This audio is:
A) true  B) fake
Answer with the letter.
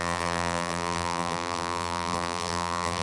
B